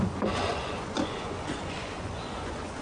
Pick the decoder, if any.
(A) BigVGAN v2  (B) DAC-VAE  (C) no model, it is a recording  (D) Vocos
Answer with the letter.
D